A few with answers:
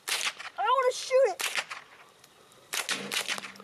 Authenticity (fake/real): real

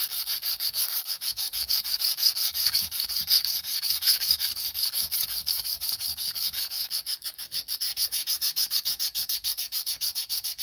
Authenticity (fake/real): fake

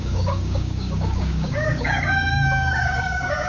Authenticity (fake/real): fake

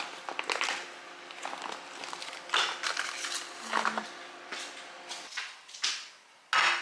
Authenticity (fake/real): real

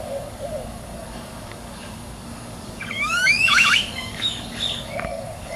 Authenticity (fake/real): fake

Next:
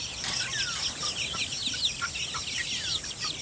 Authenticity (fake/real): real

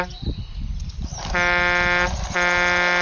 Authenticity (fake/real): real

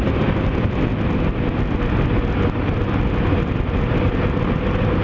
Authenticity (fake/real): real